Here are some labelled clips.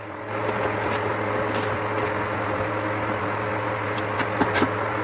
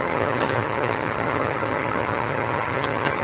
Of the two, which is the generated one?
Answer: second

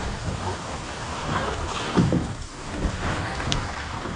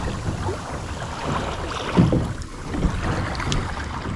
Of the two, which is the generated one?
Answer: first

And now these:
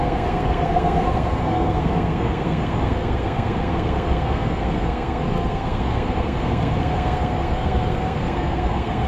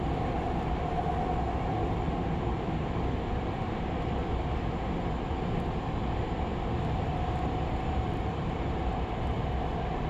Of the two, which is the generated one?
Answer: first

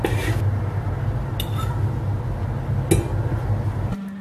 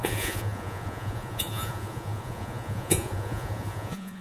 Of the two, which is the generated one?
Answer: second